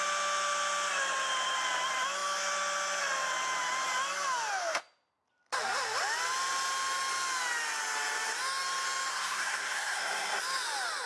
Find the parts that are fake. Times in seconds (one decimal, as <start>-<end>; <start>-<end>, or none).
9.1-10.4